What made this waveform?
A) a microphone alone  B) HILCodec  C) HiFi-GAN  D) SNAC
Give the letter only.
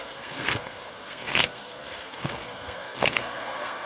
D